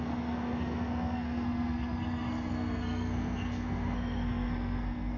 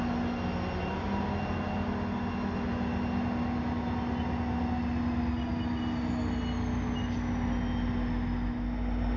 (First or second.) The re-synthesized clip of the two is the first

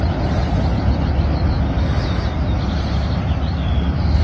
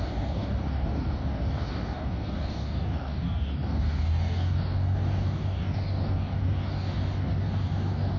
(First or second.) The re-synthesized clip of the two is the second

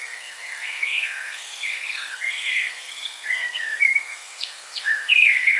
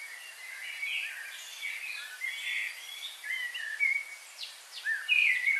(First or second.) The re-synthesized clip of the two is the first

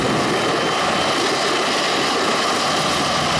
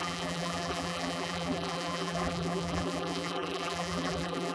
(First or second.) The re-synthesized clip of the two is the second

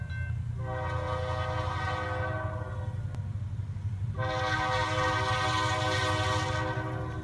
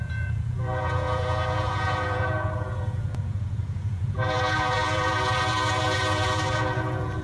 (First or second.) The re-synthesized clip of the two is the second